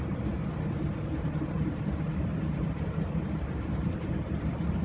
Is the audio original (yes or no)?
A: no